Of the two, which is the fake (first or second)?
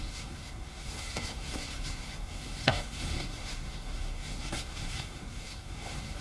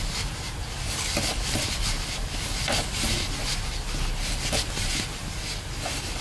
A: first